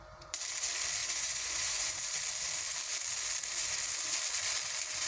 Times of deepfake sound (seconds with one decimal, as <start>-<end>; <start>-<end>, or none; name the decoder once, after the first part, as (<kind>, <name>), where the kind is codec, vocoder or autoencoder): 1.0-2.0 (vocoder, Vocos)